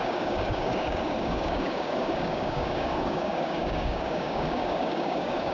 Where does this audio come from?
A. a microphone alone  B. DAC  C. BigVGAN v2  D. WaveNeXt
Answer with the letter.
B